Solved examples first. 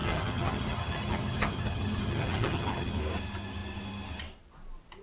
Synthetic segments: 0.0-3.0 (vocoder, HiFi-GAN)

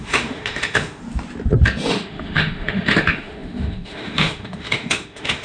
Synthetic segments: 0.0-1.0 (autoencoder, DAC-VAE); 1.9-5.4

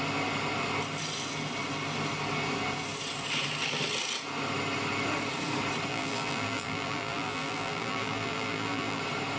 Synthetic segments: 5.9-9.0 (vocoder, BigVGAN v2)

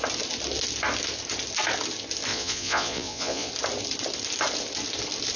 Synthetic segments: 2.3-3.5 (vocoder, Vocos)

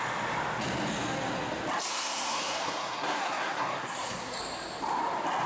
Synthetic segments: 1.9-4.4 (codec, SNAC)